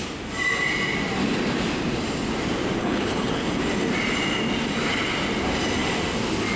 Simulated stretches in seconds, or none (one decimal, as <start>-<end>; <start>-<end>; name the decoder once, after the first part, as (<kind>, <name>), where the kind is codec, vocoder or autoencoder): 2.8-3.6 (codec, HILCodec)